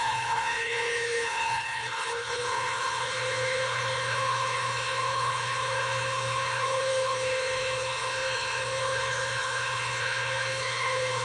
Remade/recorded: remade